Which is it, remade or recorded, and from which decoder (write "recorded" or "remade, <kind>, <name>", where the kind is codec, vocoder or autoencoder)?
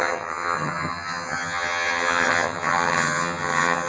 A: remade, vocoder, HiFi-GAN